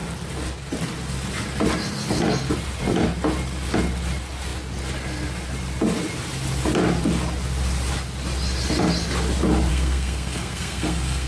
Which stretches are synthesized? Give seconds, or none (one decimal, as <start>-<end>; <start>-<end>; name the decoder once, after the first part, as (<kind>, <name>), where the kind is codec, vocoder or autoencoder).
9.7-11.3 (codec, SNAC)